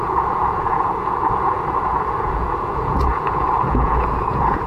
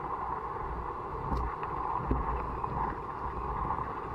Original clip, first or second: second